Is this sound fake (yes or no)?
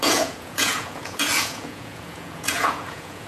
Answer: yes